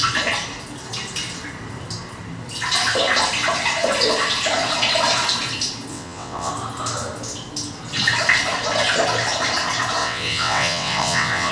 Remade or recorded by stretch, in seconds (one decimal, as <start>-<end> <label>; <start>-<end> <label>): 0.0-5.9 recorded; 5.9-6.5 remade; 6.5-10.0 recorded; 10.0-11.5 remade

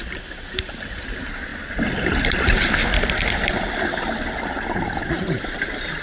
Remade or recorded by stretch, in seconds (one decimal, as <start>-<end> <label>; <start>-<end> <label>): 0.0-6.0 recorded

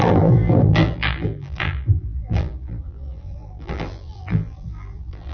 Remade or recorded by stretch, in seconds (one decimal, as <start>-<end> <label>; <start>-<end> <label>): 0.0-5.3 remade

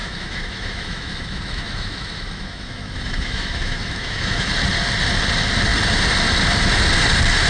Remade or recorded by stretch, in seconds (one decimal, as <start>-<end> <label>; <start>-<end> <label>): 0.0-4.5 remade; 4.5-7.5 recorded